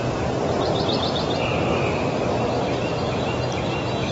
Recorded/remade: recorded